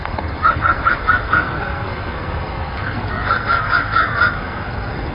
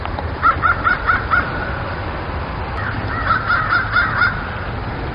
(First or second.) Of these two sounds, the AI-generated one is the first